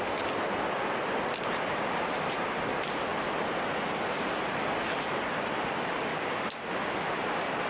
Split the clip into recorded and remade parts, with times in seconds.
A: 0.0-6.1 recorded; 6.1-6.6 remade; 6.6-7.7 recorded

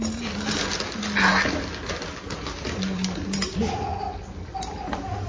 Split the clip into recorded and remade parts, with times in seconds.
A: 0.0-5.3 recorded